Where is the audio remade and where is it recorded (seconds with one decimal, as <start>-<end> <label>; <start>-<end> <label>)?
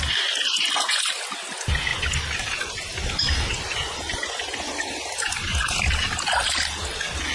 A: 0.0-7.3 recorded